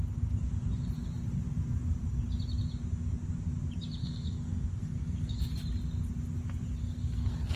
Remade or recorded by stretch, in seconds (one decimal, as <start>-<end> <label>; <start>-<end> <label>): 0.0-4.0 recorded; 4.0-5.5 remade; 5.5-6.8 recorded; 6.8-7.6 remade